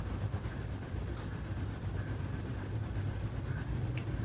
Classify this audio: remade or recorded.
recorded